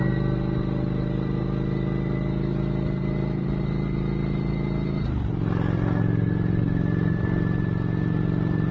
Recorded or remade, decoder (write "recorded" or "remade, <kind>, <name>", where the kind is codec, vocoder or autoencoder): recorded